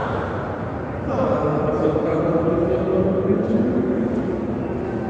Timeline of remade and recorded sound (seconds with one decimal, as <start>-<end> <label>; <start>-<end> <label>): 0.0-1.5 recorded; 1.5-2.5 remade; 2.5-5.1 recorded